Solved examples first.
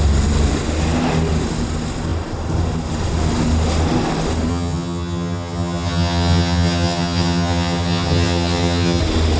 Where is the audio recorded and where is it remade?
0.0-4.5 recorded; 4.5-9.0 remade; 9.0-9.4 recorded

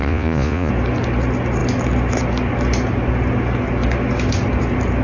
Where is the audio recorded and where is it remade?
0.0-0.7 remade; 0.7-5.0 recorded

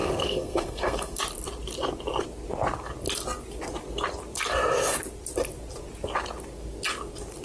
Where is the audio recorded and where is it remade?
0.0-1.2 remade; 1.2-7.4 recorded

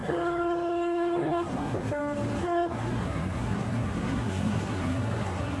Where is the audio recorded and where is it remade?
0.0-2.0 remade; 2.0-2.4 recorded; 2.4-5.6 remade

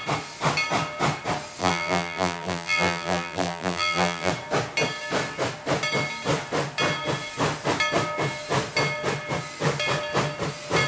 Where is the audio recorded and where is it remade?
0.0-1.6 recorded; 1.6-4.3 remade; 4.3-10.9 recorded

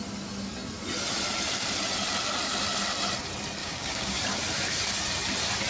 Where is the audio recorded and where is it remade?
0.0-3.6 recorded; 3.6-4.2 remade; 4.2-5.7 recorded